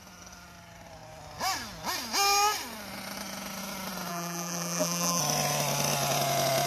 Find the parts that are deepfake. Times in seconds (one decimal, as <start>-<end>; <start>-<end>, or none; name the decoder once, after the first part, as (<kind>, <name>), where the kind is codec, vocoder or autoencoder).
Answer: 4.1-5.2 (vocoder, BigVGAN v2)